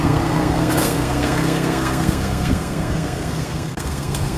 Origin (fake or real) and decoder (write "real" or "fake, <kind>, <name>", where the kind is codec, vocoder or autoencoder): fake, codec, SNAC